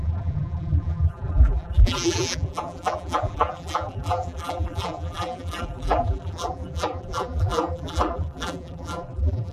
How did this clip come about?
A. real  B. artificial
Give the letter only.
B